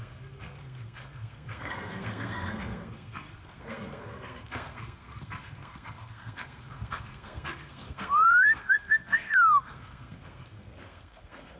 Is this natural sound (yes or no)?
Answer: no